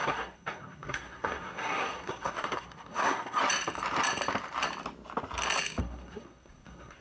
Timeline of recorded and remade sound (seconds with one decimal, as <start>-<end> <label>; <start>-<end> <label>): 0.0-3.4 remade; 3.4-5.8 recorded; 5.8-7.0 remade